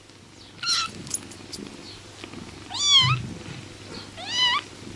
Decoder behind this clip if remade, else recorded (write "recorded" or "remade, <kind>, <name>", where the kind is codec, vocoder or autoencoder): recorded